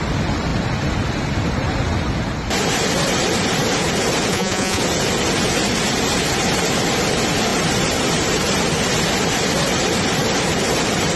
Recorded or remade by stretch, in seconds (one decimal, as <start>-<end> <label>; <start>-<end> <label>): 0.0-4.3 recorded; 4.3-4.8 remade; 4.8-11.2 recorded